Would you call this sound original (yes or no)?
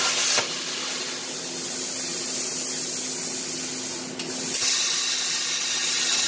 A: yes